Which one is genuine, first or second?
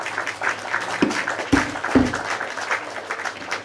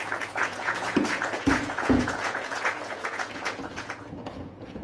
first